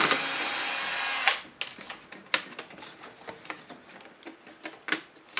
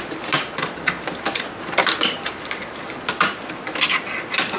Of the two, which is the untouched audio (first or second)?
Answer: first